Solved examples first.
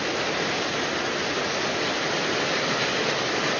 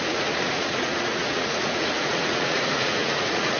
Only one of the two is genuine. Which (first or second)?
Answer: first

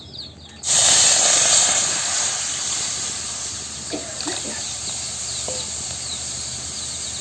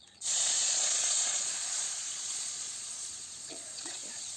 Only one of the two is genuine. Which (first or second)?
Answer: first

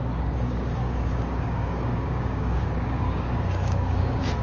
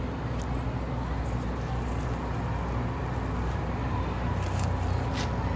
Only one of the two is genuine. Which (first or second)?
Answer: second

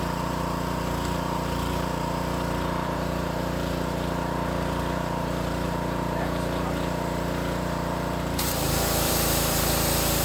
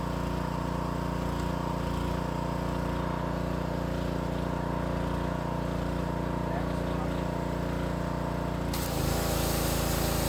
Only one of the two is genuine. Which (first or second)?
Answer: second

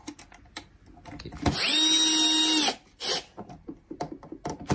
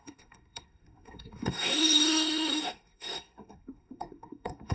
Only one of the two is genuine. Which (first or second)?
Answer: first